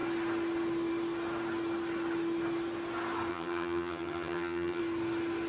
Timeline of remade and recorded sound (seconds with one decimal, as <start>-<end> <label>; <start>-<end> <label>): 0.0-3.3 recorded; 3.3-4.8 remade; 4.8-5.5 recorded